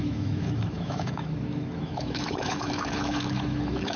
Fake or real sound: fake